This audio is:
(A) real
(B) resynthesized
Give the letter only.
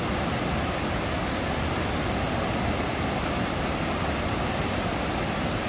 A